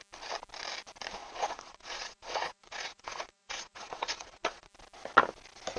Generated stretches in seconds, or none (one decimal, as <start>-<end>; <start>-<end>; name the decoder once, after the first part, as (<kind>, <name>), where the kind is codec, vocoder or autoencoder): 1.2-4.7 (vocoder, Vocos)